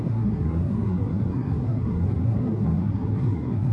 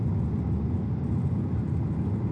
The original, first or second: second